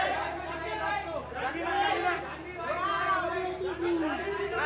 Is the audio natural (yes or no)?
yes